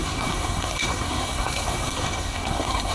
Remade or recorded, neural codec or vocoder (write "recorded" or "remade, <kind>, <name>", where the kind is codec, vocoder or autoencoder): remade, codec, SNAC